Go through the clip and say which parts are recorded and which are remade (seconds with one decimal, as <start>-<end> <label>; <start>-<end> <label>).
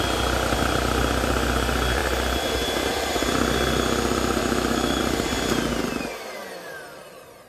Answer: 0.0-4.4 recorded; 4.4-5.0 remade; 5.0-7.5 recorded